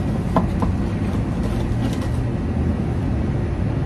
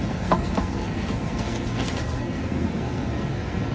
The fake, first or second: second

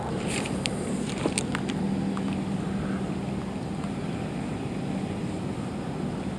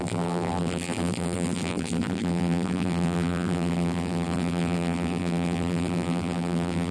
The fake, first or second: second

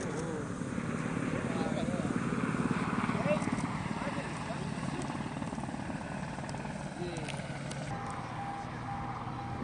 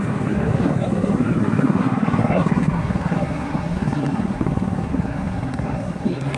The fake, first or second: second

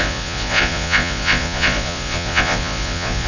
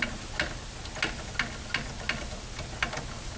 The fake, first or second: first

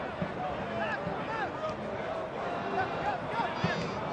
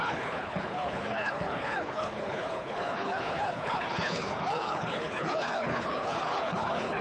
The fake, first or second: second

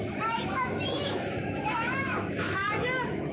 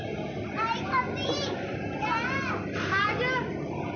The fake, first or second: first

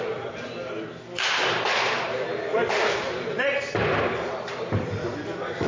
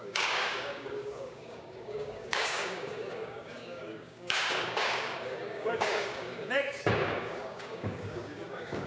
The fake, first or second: second